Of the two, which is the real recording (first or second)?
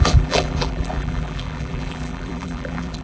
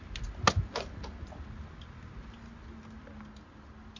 second